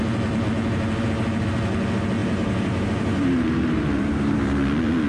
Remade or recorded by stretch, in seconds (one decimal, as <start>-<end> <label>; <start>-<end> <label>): 0.0-2.2 recorded; 2.2-4.4 remade; 4.4-5.1 recorded